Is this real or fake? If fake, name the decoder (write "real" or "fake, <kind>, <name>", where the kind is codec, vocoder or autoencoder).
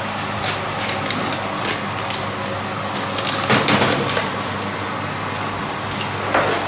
real